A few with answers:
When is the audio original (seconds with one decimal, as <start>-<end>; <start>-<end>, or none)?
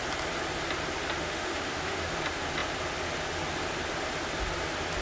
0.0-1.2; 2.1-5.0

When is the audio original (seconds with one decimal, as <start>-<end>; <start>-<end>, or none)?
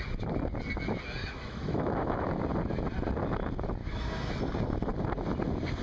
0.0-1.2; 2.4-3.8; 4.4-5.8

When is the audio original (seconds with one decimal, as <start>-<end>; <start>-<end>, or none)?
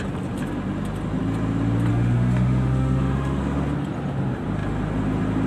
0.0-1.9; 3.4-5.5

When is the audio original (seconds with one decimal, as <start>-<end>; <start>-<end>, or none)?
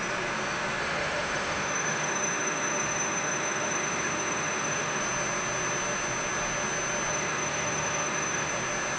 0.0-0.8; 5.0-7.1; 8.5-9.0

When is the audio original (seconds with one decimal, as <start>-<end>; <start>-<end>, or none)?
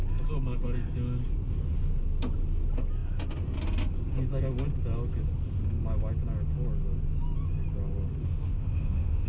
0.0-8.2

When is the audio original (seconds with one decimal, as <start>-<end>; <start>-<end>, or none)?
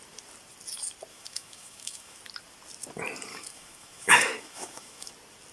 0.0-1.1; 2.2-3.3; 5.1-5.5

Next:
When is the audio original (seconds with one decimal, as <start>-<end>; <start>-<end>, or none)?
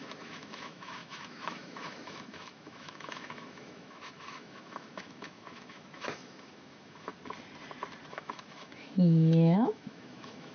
7.1-8.1